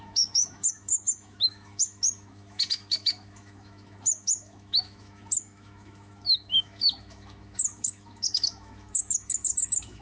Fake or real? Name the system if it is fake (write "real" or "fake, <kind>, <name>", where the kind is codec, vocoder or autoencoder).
fake, autoencoder, DAC-VAE